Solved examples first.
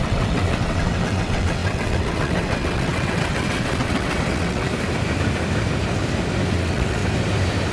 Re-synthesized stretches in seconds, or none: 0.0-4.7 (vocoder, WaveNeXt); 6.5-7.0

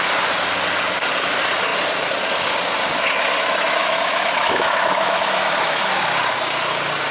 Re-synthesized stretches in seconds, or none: 3.8-5.9 (autoencoder, DAC-VAE)

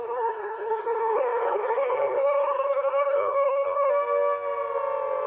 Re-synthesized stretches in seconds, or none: 0.0-3.9 (codec, SNAC)

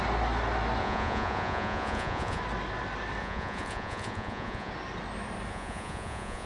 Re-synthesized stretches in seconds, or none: 0.8-2.4 (vocoder, Vocos); 3.2-4.7; 5.5-6.5

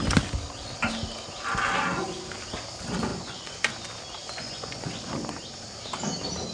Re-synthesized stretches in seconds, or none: 3.1-3.7 (vocoder, Vocos); 4.2-5.3

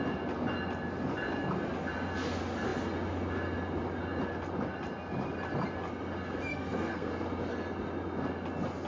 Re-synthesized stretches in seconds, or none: 6.5-7.1 (codec, SNAC)

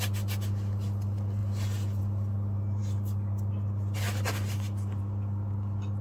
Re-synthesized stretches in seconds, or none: none